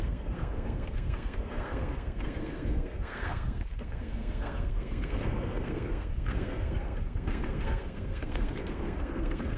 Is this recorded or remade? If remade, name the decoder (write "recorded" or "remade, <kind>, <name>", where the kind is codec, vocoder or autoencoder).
remade, codec, SNAC